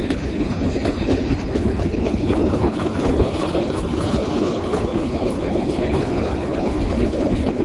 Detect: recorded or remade remade